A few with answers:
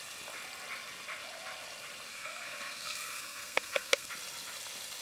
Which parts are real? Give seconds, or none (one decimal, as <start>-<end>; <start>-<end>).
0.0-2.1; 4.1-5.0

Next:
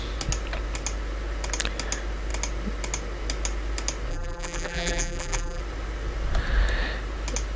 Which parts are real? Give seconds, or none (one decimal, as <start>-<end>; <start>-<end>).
0.0-4.1; 5.6-7.6

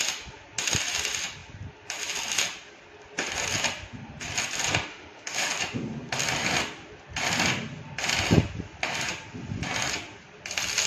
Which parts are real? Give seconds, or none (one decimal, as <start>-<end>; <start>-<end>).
0.0-4.9; 5.5-10.9